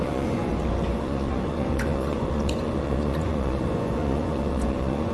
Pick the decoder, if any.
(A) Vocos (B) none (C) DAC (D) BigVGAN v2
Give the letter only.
A